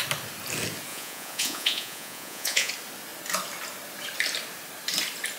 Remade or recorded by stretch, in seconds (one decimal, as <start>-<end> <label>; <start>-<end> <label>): 0.0-0.9 recorded; 0.9-2.7 remade; 2.7-5.4 recorded